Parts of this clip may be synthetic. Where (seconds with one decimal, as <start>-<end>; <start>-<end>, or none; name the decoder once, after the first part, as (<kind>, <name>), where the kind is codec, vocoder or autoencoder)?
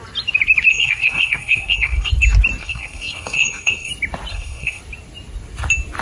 0.7-2.1 (codec, SNAC); 2.6-3.9; 4.3-4.8